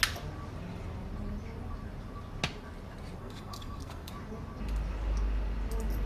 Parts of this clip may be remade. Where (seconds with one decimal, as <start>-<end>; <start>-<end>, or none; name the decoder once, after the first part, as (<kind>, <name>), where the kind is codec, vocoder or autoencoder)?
3.2-4.1 (codec, SNAC)